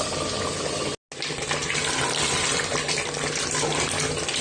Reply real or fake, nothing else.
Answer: real